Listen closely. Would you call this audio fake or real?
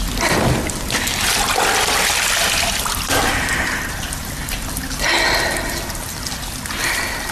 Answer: real